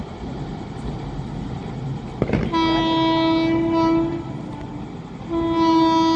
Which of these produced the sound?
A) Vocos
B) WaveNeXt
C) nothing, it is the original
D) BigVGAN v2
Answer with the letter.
C